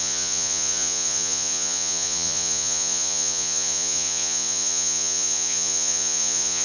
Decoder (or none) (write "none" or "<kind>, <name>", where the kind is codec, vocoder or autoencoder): vocoder, Vocos